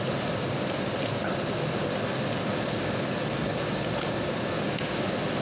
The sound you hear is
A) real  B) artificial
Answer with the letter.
A